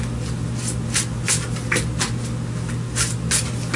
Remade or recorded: recorded